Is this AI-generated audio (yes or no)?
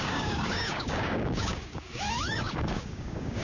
yes